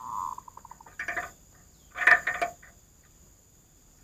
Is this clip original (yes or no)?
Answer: yes